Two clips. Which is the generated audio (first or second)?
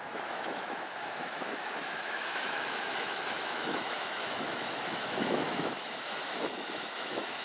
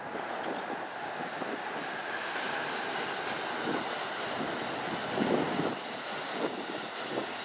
first